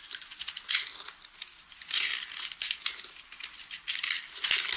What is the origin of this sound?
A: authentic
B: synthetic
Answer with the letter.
A